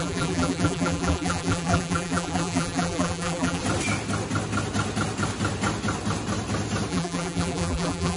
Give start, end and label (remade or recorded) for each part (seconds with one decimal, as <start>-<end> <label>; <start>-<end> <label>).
0.0-3.6 remade; 3.6-6.9 recorded; 6.9-8.2 remade